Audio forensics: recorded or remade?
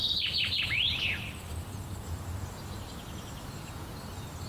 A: recorded